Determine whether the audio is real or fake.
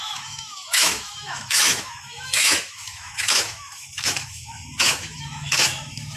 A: fake